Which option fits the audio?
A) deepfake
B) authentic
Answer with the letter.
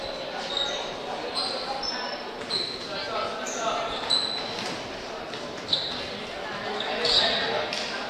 B